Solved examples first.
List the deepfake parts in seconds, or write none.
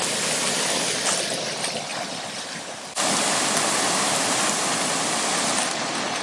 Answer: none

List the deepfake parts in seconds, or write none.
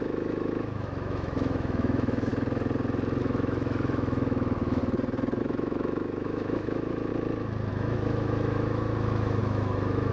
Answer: 0.0-2.3 (autoencoder, DAC-VAE); 3.2-4.8; 5.4-7.1; 7.7-10.1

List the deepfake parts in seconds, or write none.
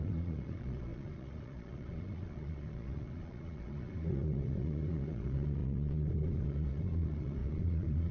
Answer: 0.0-8.1 (vocoder, Vocos)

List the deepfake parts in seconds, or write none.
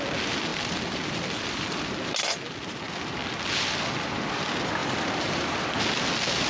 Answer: 0.5-1.8 (vocoder, BigVGAN v2); 4.8-5.8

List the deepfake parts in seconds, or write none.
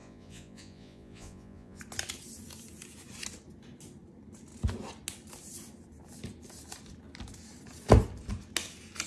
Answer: 0.0-1.8 (vocoder, Vocos)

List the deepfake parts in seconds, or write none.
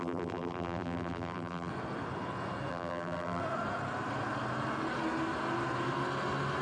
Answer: 0.0-1.7 (vocoder, BigVGAN v2); 2.7-3.4